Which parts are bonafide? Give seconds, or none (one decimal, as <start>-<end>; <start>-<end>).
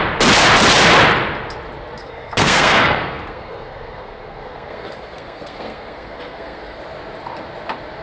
0.0-2.0; 6.8-8.0